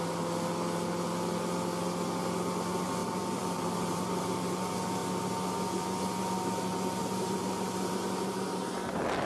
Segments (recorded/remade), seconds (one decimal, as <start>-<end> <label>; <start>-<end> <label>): 0.0-3.0 recorded; 3.0-4.6 remade; 4.6-7.0 recorded; 7.0-8.7 remade; 8.7-9.3 recorded